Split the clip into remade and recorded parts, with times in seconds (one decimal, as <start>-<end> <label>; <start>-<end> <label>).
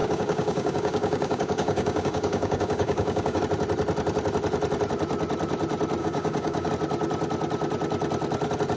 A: 0.0-3.4 remade; 3.4-6.0 recorded; 6.0-6.7 remade; 6.7-8.8 recorded